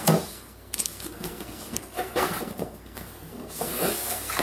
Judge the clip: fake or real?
fake